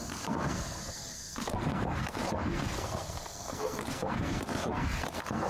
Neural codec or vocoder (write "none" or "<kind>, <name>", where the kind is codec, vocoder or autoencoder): codec, SNAC